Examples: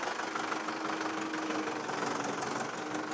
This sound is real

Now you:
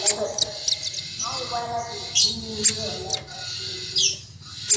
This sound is real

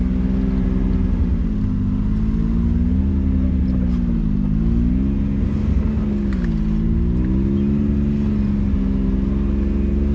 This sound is real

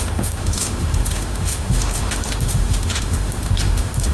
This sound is fake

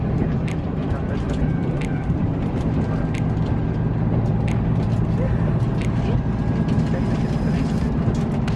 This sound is real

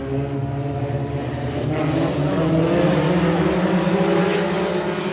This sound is real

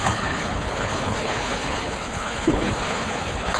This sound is fake